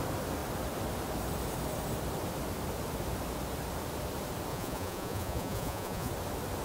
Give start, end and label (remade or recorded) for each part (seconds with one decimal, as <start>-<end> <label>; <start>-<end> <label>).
0.0-4.5 recorded; 4.5-6.1 remade; 6.1-6.6 recorded